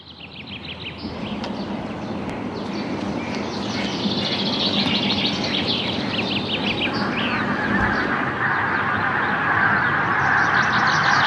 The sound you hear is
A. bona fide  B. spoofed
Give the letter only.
A